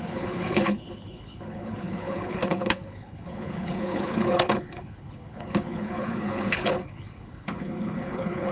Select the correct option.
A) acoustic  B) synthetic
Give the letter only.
B